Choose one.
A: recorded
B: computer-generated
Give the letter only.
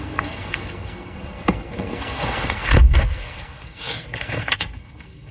B